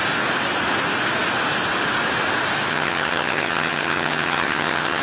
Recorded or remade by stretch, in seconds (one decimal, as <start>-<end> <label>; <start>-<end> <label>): 0.0-2.7 recorded; 2.7-5.0 remade